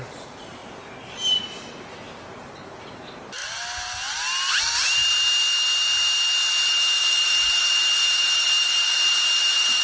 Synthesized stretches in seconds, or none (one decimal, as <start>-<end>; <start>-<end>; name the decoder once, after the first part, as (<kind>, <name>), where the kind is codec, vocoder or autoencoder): 0.0-0.6 (vocoder, BigVGAN v2); 2.3-3.4; 4.6-5.0; 7.0-9.8